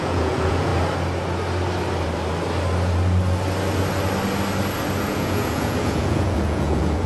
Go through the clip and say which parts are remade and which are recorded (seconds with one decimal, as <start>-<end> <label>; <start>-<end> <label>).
0.0-0.7 remade; 0.7-5.0 recorded; 5.0-7.1 remade